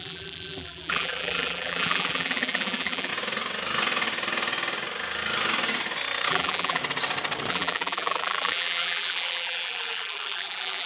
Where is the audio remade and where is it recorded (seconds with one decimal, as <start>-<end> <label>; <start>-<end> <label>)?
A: 0.0-3.1 remade; 3.1-6.3 recorded; 6.3-6.8 remade; 6.8-7.5 recorded; 7.5-10.9 remade